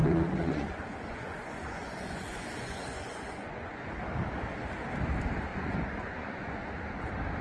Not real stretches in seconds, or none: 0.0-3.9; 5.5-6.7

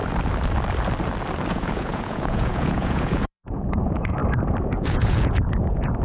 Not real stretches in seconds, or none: 1.5-4.2; 4.7-6.0